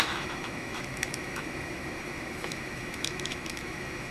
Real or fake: fake